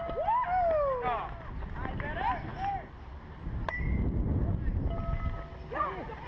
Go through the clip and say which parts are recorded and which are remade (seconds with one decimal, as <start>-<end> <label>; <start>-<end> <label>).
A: 0.0-6.3 recorded